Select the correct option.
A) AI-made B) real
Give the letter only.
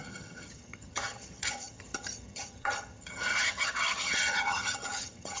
A